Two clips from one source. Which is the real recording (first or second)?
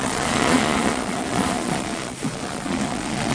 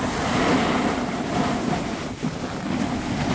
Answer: second